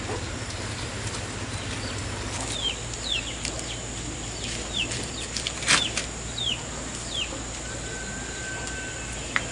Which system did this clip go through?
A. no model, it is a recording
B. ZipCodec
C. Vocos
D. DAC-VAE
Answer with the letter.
A